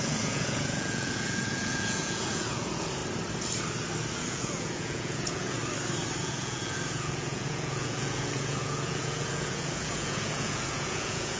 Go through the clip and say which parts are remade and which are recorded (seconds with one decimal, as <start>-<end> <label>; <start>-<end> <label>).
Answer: 0.0-3.0 remade; 3.0-4.1 recorded; 4.1-5.6 remade; 5.6-6.2 recorded; 6.2-11.4 remade